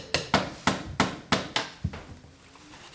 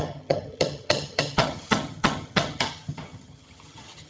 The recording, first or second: first